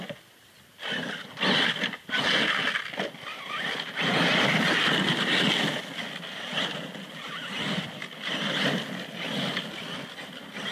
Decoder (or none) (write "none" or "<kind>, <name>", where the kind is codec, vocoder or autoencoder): none